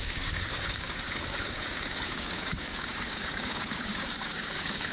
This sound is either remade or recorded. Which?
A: remade